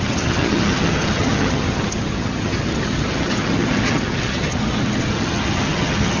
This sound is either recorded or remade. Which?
remade